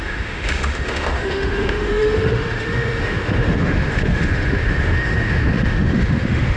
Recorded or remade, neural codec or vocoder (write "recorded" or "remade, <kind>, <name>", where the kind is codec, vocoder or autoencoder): remade, autoencoder, DAC-VAE